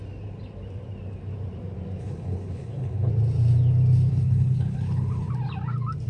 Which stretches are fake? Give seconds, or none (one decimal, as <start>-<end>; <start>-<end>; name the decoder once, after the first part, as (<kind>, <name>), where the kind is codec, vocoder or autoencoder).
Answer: 2.0-3.1 (codec, HILCodec); 4.1-5.3